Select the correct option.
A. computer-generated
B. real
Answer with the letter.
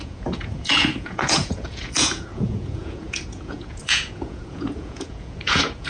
A